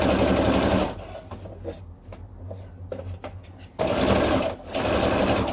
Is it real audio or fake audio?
real